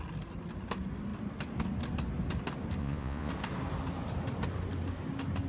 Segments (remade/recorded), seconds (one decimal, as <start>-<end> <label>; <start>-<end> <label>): 0.0-2.8 recorded; 2.8-3.3 remade; 3.3-5.5 recorded